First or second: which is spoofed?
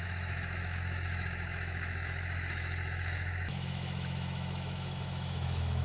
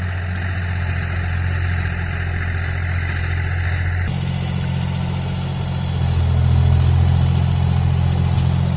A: first